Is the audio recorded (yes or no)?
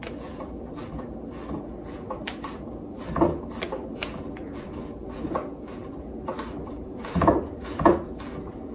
no